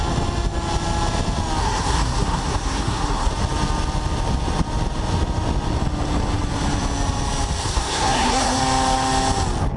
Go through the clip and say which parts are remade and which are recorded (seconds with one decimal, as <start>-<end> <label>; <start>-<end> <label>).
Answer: 0.0-1.6 recorded; 1.6-3.3 remade; 3.3-7.6 recorded; 7.6-8.6 remade; 8.6-9.8 recorded